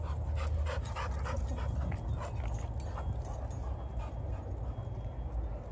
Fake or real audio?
real